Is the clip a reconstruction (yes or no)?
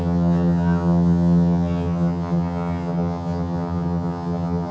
yes